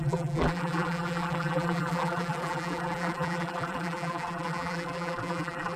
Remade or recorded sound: remade